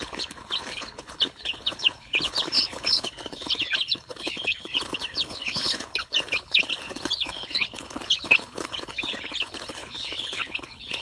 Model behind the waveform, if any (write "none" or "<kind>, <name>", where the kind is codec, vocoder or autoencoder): codec, HILCodec